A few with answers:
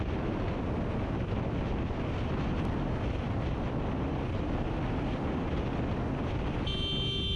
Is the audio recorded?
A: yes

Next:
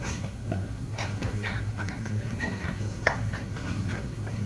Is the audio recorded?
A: no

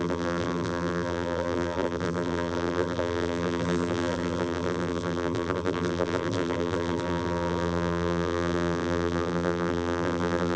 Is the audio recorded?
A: no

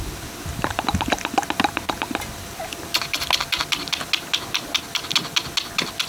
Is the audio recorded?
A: yes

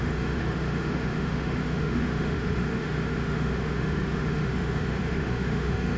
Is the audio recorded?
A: no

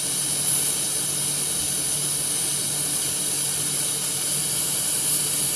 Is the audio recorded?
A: yes